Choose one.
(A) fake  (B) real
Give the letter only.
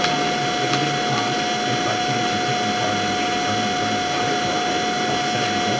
B